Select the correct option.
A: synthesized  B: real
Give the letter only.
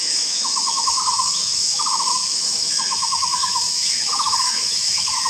A